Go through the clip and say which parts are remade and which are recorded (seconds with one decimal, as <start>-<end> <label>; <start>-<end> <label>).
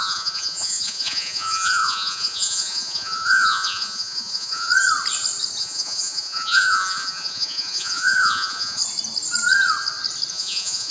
0.0-4.7 remade; 4.7-5.6 recorded; 5.6-8.8 remade; 8.8-10.3 recorded; 10.3-10.9 remade